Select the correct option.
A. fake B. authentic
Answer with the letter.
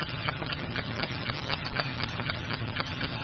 A